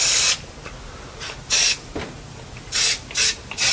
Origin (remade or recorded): recorded